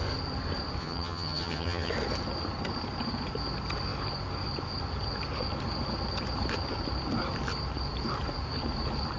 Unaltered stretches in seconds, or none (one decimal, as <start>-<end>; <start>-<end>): 0.0-0.8; 1.9-9.2